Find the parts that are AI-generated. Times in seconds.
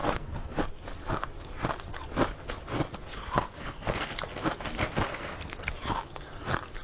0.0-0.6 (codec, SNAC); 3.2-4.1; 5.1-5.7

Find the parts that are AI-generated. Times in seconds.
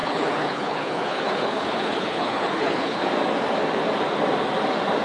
0.0-3.0 (codec, HILCodec)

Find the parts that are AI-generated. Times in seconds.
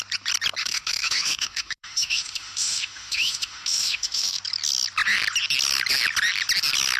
0.6-4.4 (autoencoder, DAC-VAE)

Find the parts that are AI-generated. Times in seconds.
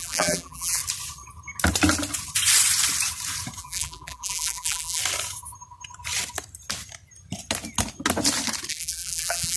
0.0-0.8 (vocoder, BigVGAN v2); 3.6-5.0; 8.7-9.6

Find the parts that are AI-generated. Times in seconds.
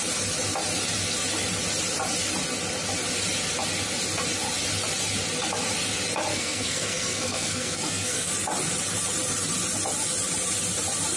6.3-8.3 (codec, SNAC)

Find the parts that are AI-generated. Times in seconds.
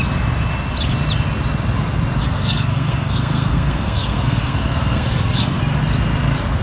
2.2-5.6 (codec, SNAC)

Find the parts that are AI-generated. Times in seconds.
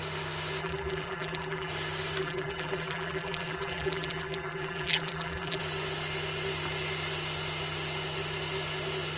0.6-1.7 (vocoder, BigVGAN v2); 2.2-5.6